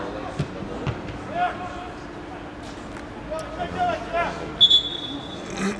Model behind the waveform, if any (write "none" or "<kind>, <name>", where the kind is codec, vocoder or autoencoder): none